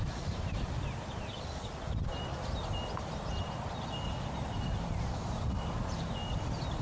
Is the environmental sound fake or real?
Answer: real